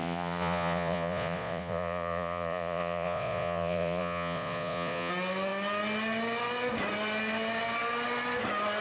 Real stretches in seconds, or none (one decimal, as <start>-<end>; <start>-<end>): 5.1-8.8